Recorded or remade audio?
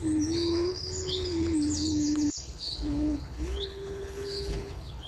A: remade